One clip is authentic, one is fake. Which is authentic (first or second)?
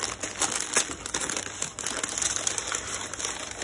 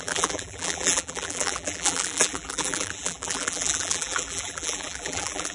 first